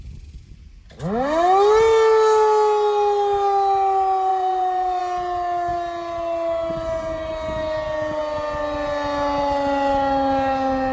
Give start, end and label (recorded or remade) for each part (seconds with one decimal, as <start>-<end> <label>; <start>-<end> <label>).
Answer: 0.0-4.3 recorded; 4.3-5.0 remade; 5.0-10.9 recorded